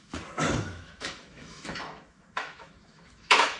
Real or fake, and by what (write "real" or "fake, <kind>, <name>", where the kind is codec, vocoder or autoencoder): fake, autoencoder, DAC-VAE